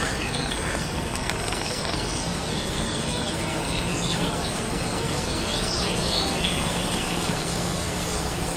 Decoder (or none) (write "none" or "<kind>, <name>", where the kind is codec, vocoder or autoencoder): codec, SNAC